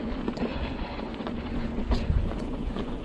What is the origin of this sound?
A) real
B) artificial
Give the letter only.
B